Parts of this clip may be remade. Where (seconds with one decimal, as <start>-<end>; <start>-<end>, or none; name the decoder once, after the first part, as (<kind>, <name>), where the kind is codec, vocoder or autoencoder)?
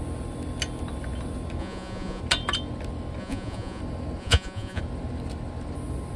1.6-2.2 (vocoder, Vocos); 3.2-3.8; 4.2-4.8